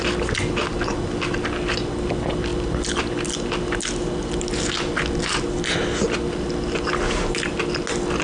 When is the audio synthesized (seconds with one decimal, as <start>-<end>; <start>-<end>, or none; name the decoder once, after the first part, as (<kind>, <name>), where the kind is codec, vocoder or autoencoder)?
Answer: none